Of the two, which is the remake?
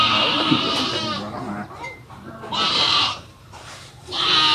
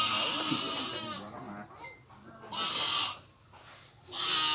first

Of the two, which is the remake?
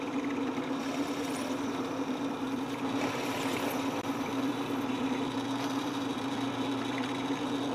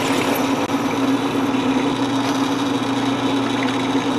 first